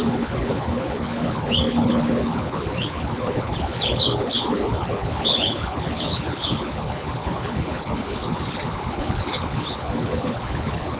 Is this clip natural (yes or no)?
no